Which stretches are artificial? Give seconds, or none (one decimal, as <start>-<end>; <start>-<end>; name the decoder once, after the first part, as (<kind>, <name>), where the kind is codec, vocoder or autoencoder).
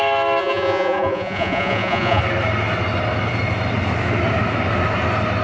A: 0.4-2.2 (vocoder, Vocos)